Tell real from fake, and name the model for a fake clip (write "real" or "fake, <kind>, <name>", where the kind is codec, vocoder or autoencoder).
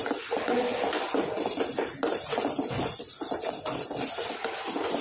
real